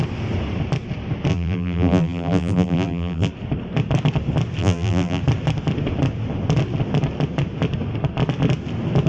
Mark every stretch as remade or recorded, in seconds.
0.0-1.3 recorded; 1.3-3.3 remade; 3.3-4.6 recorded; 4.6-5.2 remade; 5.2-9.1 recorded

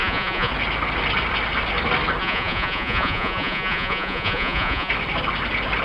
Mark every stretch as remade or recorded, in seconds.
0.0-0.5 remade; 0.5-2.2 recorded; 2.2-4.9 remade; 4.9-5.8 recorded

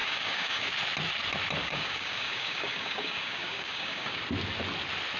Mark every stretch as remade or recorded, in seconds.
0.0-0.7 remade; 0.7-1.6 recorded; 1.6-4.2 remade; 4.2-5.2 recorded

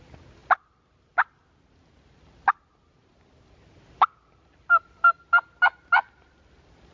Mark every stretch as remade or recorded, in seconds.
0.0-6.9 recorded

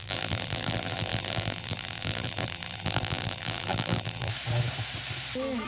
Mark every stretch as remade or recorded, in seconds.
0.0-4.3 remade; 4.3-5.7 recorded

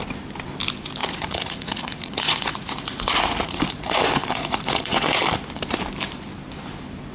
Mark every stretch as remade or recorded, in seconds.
0.0-1.0 recorded; 1.0-5.2 remade; 5.2-7.1 recorded